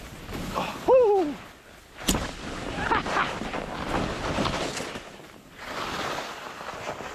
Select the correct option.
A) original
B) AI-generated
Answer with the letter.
A